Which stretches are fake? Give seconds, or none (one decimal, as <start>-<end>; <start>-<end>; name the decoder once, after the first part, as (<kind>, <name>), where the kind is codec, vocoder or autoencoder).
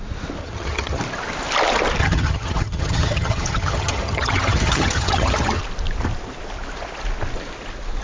0.4-1.0 (vocoder, HiFi-GAN); 2.0-5.6